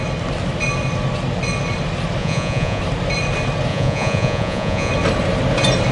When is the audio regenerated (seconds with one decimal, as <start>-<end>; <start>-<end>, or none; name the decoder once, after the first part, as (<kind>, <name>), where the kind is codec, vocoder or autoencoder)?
2.2-2.8 (vocoder, Vocos); 3.7-4.9